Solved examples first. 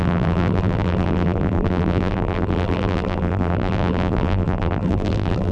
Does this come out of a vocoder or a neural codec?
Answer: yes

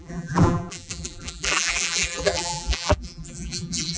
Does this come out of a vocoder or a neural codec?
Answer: yes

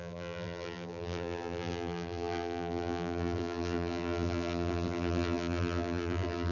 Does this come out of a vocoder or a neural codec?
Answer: yes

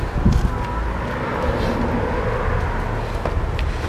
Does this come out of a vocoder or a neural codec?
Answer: no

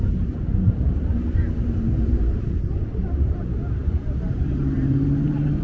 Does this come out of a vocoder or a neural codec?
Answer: yes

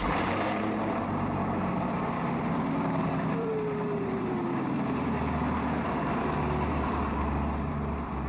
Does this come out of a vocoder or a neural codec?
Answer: yes